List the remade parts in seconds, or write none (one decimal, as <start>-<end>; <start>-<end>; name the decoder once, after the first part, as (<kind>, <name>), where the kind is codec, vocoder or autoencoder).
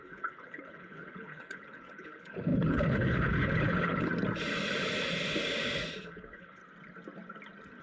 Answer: 0.0-4.1 (codec, HILCodec); 6.0-6.6